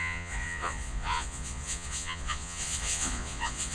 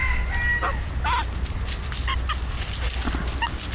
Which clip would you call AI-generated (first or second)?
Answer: first